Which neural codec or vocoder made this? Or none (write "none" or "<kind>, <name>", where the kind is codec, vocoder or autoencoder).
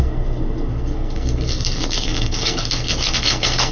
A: codec, SNAC